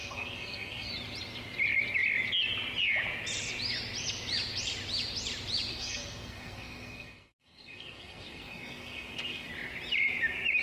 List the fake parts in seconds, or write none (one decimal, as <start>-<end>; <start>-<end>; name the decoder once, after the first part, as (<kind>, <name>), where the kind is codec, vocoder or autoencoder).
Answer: 0.0-0.9 (codec, SNAC); 5.7-9.5